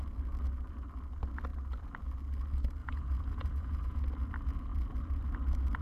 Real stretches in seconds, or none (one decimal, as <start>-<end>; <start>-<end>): 0.0-2.8; 4.0-5.8